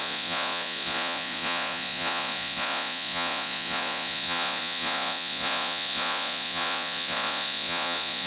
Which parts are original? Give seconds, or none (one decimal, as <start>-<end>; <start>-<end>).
none

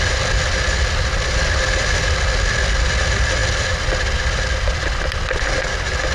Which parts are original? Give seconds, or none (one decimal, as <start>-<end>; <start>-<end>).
0.0-6.1

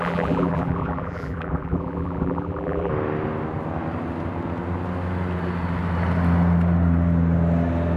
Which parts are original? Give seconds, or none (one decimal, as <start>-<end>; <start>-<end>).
2.9-8.0